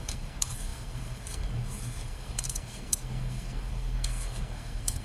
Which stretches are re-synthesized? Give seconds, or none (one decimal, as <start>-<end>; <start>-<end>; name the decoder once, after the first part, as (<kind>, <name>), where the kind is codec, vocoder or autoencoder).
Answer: 0.0-5.0 (codec, SNAC)